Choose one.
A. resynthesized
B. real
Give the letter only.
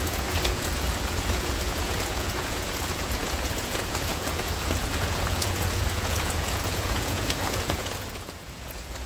A